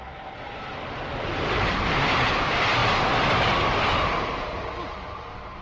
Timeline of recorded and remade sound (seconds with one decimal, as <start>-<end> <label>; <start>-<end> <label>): 0.0-5.6 recorded